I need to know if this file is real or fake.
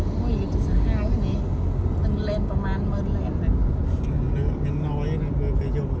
real